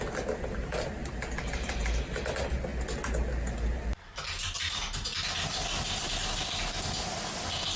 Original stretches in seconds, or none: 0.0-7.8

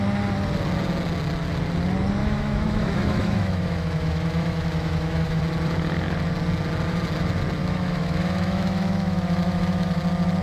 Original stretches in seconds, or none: 0.0-2.2; 5.4-7.6; 10.0-10.4

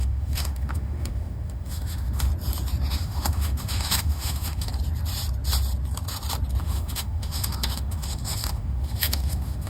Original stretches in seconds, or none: 2.3-2.9; 4.7-6.6

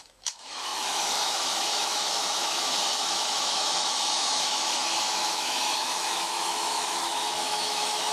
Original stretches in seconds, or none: none

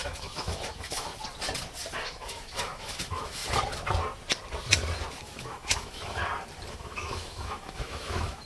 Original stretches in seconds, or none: 1.1-1.9; 3.4-5.2; 6.2-6.7

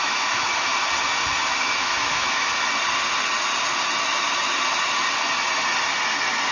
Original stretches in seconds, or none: 0.7-1.6; 2.5-6.5

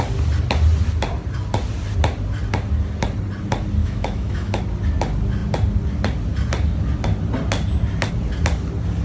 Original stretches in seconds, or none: 0.0-3.8; 4.6-9.0